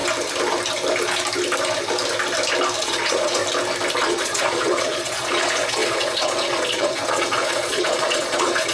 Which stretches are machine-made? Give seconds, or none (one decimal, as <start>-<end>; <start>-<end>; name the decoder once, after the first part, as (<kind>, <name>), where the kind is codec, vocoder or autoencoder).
2.8-3.4 (vocoder, Vocos); 4.0-8.7